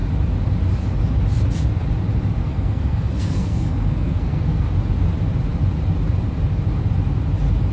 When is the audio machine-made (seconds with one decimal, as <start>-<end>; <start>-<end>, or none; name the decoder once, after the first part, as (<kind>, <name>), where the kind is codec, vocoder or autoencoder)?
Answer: 2.4-4.7 (codec, SNAC)